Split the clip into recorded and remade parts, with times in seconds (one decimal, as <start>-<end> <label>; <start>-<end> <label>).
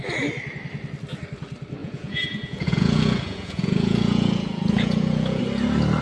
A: 0.0-1.8 recorded; 1.8-5.4 remade; 5.4-6.0 recorded